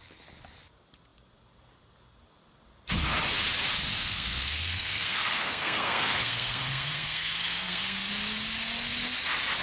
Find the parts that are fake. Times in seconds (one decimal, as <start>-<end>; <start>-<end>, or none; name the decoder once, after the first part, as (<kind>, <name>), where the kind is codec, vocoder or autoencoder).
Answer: 3.9-8.1 (codec, SNAC)